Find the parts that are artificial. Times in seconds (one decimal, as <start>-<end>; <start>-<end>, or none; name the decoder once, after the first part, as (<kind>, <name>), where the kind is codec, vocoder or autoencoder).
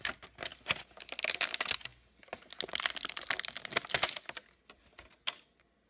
none